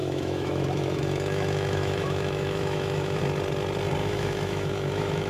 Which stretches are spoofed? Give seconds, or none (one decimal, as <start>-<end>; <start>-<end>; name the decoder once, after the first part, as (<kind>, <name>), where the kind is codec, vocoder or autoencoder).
0.0-3.2 (autoencoder, DAC-VAE); 4.0-5.3